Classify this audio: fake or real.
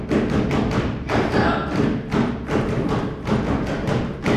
real